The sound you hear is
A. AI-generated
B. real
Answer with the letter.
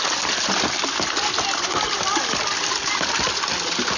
B